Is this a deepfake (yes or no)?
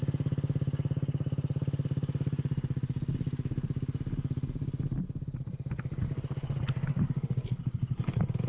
no